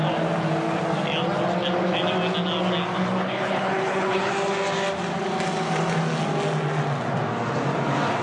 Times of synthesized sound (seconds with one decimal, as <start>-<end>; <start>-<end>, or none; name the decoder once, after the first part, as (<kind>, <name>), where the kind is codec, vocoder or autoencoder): 3.2-4.3 (codec, HILCodec)